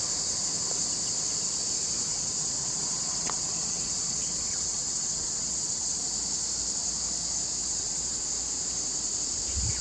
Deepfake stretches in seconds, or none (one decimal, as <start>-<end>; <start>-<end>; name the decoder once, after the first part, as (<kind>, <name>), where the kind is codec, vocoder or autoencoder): 2.1-6.0 (vocoder, WaveNeXt); 7.6-8.3